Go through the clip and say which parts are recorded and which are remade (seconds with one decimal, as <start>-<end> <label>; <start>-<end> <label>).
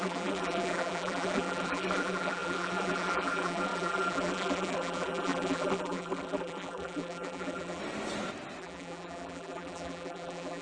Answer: 0.0-7.8 remade; 7.8-8.6 recorded; 8.6-10.6 remade